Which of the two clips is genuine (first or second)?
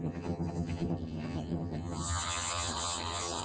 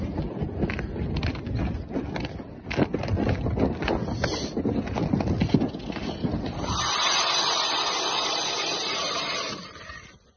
second